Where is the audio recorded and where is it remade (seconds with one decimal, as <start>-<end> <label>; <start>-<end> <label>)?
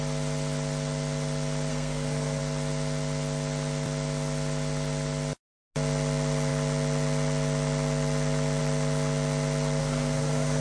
0.0-1.7 recorded; 1.7-2.4 remade; 2.4-9.8 recorded; 9.8-10.6 remade